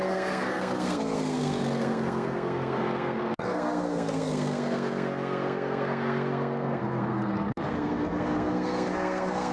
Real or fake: fake